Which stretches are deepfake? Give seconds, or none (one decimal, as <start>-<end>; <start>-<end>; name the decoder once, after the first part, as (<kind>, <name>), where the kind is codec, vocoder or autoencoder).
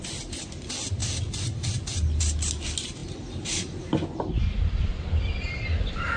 none